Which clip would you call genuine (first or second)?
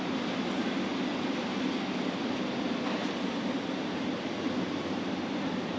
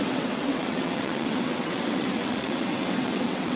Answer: first